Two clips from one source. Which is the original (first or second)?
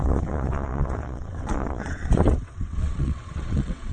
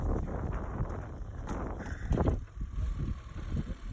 second